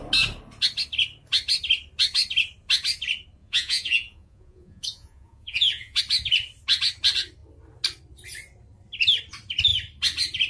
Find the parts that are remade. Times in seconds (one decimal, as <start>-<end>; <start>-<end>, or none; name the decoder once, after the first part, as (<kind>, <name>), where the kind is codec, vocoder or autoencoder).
3.4-6.0 (vocoder, Vocos)